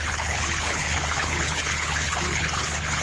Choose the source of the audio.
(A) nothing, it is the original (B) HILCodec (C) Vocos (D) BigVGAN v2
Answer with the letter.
B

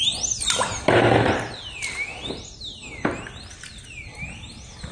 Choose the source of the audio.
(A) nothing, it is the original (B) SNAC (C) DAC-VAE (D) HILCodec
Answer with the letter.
A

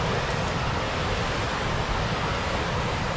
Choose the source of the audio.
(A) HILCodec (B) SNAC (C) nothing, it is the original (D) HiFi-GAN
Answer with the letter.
C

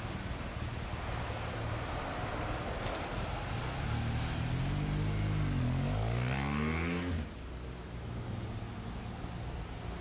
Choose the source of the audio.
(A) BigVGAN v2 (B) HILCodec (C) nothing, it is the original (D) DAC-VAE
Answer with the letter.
C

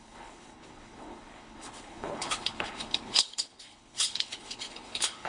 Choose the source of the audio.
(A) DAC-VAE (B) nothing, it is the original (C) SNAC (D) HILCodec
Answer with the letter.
D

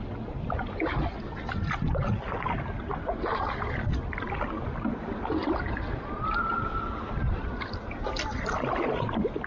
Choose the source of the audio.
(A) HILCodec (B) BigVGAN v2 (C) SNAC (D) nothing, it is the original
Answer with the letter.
D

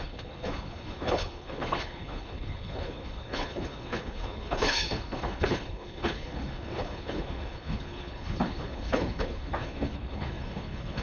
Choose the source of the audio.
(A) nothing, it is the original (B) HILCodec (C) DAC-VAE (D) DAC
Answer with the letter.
B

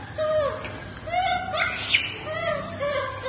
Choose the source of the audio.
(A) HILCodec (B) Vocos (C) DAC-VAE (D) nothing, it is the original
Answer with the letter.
D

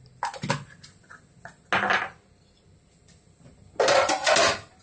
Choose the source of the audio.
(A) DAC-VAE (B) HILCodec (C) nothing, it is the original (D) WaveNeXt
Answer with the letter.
C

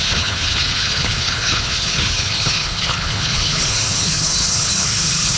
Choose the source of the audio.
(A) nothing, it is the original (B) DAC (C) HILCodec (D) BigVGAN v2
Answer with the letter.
C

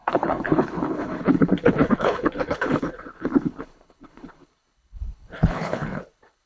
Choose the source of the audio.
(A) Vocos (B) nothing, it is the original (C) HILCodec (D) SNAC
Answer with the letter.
C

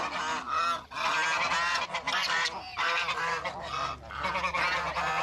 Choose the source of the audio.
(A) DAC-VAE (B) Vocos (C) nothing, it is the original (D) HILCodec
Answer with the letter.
C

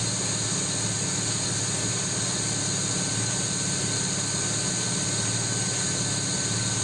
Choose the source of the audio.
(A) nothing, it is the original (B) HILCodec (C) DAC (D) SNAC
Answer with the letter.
A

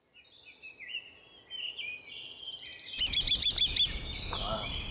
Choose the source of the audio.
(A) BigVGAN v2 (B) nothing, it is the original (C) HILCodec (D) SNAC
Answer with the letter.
B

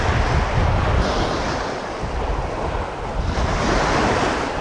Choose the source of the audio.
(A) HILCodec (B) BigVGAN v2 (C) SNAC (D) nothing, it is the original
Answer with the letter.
D